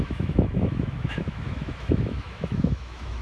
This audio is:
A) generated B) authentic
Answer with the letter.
A